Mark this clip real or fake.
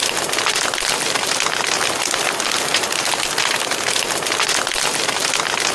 real